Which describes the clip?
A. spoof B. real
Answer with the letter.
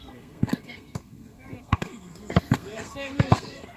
A